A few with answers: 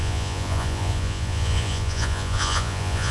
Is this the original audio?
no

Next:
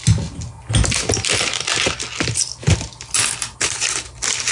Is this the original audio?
yes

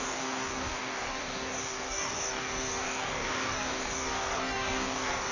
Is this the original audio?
no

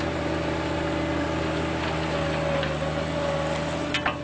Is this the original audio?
yes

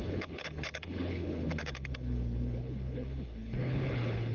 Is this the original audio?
no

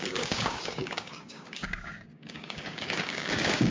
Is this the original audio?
no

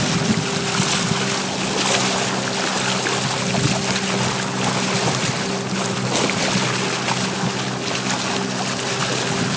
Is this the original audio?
yes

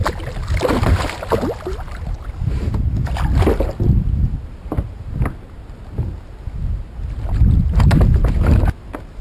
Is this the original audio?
yes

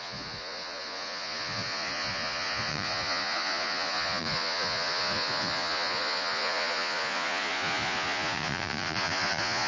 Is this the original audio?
no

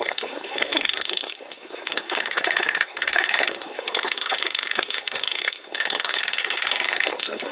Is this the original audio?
no